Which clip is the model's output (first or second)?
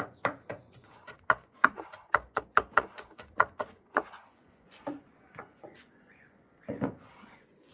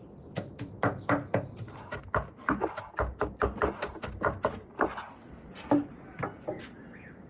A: first